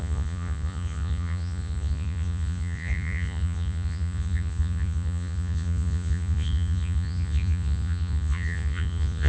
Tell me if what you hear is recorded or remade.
remade